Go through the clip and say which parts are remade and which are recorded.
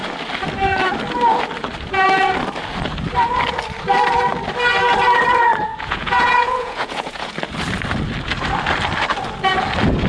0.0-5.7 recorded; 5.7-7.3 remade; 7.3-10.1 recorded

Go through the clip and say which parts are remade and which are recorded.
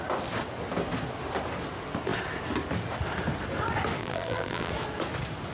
0.0-4.0 recorded; 4.0-4.7 remade; 4.7-5.5 recorded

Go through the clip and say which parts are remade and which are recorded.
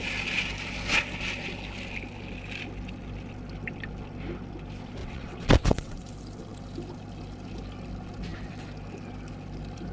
0.0-5.0 recorded; 5.0-6.0 remade; 6.0-9.9 recorded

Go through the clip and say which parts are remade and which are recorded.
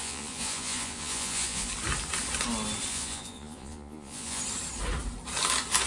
0.0-1.7 remade; 1.7-2.9 recorded; 2.9-4.4 remade; 4.4-5.9 recorded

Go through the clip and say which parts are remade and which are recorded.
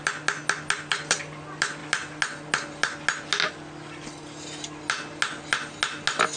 0.0-6.4 recorded